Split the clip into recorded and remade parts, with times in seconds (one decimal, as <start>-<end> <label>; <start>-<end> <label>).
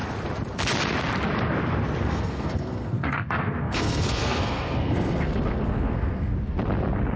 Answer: 0.0-2.1 recorded; 2.1-6.3 remade; 6.3-7.2 recorded